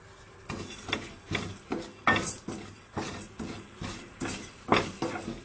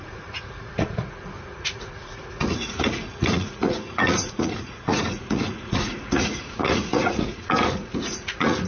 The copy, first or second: second